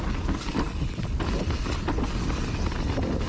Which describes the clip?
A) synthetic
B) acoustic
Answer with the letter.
B